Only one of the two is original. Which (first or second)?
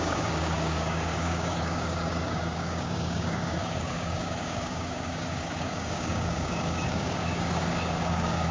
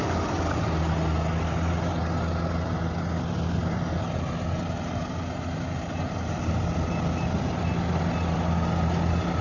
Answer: second